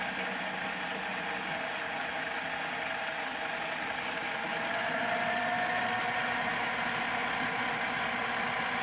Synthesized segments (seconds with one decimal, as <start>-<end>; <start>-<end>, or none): none